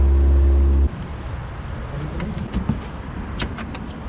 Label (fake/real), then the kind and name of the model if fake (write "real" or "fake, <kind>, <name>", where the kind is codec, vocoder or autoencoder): real